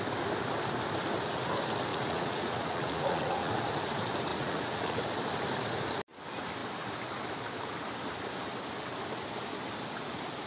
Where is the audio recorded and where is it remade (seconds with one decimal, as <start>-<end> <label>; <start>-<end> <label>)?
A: 0.0-1.9 recorded; 1.9-3.5 remade; 3.5-4.3 recorded; 4.3-5.0 remade; 5.0-10.5 recorded

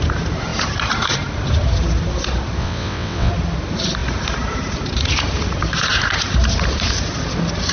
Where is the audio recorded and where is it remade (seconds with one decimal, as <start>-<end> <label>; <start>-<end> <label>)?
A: 0.0-2.6 recorded; 2.6-3.3 remade; 3.3-7.7 recorded

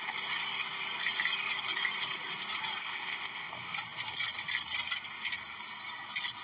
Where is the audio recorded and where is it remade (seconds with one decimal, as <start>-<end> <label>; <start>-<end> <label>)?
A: 0.0-2.8 recorded; 2.8-3.5 remade; 3.5-6.4 recorded

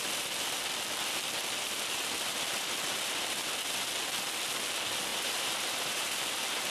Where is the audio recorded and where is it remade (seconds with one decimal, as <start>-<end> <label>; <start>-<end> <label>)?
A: 0.0-5.1 recorded; 5.1-6.1 remade; 6.1-6.7 recorded